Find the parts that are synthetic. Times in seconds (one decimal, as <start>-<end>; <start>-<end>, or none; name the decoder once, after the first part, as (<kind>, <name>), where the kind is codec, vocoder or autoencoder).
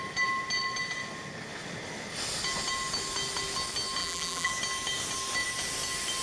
4.0-4.5 (vocoder, BigVGAN v2)